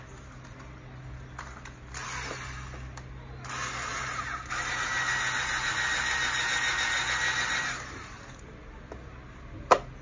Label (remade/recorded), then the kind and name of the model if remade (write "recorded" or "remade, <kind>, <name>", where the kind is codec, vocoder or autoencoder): recorded